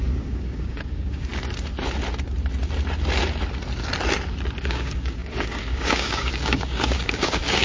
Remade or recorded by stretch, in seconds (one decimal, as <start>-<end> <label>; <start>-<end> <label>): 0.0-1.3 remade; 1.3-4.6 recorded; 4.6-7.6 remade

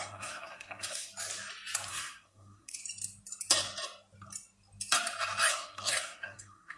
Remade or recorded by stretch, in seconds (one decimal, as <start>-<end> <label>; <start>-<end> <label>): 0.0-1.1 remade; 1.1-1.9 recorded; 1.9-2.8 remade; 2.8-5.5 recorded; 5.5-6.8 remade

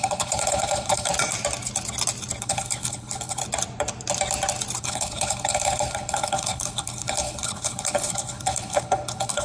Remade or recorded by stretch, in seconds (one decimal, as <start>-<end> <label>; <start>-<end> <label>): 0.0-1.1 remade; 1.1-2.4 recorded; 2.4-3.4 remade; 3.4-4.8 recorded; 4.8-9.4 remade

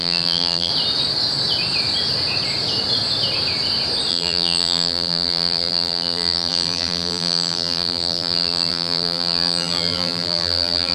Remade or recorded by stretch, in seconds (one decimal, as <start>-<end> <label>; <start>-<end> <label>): 0.0-0.7 remade; 0.7-4.1 recorded; 4.1-10.9 remade

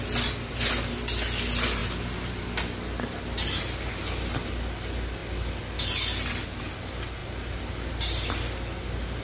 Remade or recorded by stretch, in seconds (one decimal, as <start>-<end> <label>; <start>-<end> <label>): 0.0-9.2 recorded